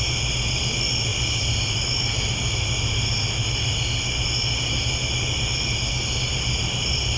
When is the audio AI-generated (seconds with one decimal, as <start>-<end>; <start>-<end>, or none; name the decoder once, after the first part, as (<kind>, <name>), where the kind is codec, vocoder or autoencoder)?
none